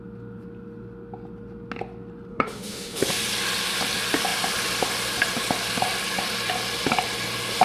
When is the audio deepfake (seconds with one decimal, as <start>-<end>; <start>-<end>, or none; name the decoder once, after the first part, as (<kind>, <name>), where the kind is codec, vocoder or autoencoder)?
2.3-3.0 (autoencoder, DAC-VAE)